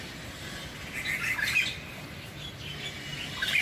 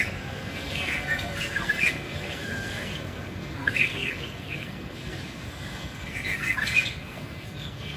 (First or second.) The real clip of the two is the first